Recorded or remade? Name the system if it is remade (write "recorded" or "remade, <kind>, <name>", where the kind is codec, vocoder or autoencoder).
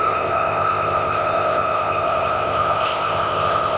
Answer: remade, codec, ZipCodec